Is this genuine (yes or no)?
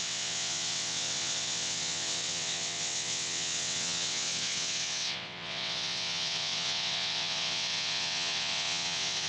no